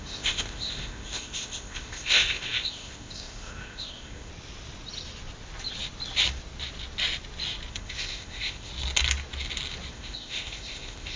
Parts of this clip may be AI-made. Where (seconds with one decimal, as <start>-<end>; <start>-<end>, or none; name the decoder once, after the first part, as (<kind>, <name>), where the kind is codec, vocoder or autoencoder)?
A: 0.0-4.3 (codec, ZipCodec); 7.7-8.7; 9.9-11.2